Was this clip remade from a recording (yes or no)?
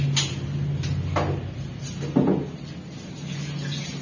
no